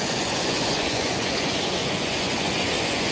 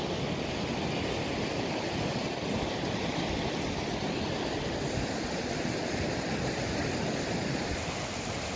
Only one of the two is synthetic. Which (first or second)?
first